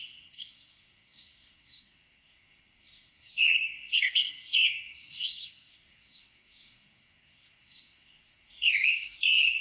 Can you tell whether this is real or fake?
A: fake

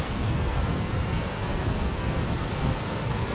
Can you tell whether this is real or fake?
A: fake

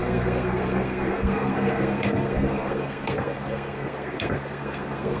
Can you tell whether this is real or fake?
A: fake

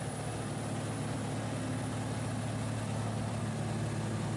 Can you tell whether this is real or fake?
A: real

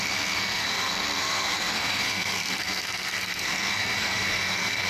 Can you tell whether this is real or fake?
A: fake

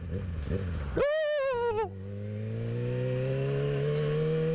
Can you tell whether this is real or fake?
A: real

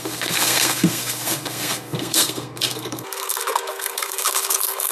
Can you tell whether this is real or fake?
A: fake